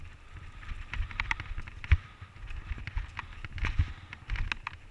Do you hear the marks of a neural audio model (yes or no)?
no